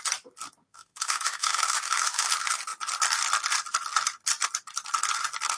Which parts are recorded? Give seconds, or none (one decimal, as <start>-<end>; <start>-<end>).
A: 0.0-0.7; 2.3-5.6